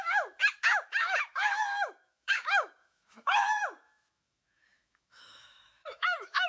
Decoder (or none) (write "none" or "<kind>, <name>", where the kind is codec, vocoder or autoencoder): autoencoder, DAC-VAE